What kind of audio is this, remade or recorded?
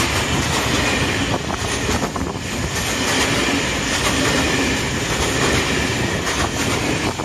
recorded